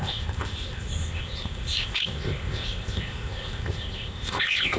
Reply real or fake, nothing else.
fake